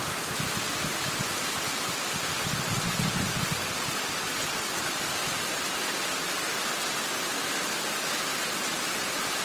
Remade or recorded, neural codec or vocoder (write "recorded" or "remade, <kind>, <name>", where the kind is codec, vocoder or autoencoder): remade, vocoder, BigVGAN v2